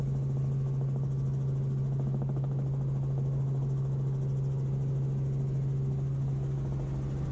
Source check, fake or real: real